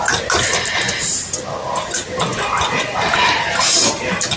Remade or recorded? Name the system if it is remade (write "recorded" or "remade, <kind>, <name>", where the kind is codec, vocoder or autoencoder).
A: recorded